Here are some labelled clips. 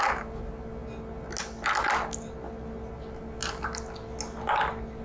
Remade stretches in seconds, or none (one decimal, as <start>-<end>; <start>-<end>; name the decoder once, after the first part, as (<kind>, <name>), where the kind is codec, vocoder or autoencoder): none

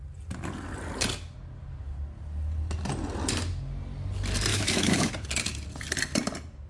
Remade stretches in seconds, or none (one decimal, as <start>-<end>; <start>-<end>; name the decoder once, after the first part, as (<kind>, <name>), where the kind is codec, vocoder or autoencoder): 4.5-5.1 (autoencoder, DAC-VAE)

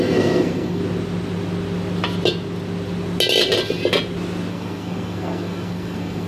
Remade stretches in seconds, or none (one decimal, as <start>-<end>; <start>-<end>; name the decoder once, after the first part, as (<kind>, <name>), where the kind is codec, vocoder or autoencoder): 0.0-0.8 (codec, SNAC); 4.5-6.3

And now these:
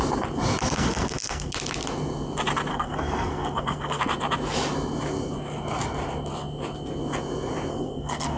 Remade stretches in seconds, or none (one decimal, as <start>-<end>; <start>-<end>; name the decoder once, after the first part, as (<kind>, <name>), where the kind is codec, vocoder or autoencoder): 0.6-1.5 (codec, SNAC); 2.7-4.0; 7.7-8.4

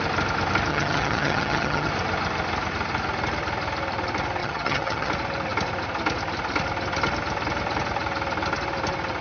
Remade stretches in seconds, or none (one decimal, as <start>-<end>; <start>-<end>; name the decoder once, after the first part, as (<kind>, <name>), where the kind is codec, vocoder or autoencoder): 0.7-1.9 (vocoder, HiFi-GAN); 4.4-5.1

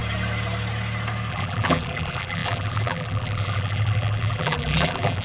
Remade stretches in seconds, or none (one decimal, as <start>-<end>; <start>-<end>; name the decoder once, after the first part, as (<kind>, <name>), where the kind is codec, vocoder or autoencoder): 1.3-5.2 (vocoder, BigVGAN v2)

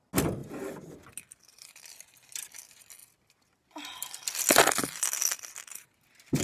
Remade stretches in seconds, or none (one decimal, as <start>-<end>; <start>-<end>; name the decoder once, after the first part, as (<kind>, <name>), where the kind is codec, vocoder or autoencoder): none

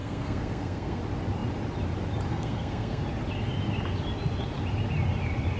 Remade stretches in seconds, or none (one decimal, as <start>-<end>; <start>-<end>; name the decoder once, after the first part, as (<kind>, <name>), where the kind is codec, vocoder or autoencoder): 0.0-1.0 (codec, SNAC); 2.3-3.0